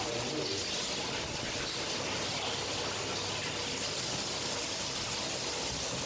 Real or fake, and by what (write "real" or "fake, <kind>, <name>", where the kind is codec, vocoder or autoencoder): real